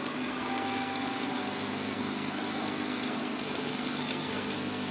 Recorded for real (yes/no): no